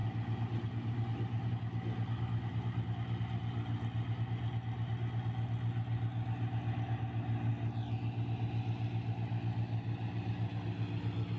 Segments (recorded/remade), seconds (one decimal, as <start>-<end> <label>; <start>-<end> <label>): 0.0-11.4 recorded